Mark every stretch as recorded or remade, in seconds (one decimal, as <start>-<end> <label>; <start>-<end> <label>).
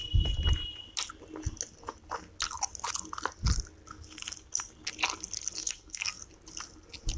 0.0-5.6 recorded; 5.6-6.2 remade; 6.2-7.2 recorded